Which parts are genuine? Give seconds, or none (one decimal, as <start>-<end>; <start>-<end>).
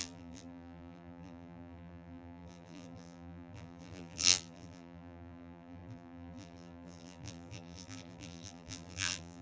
none